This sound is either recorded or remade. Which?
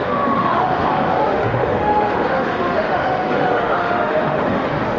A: remade